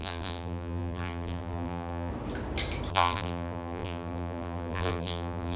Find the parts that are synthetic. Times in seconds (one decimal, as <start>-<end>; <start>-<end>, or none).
0.0-2.1; 2.9-5.6